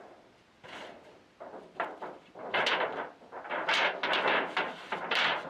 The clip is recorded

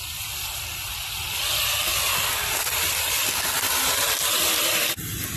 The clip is recorded